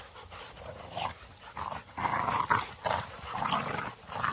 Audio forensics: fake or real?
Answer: fake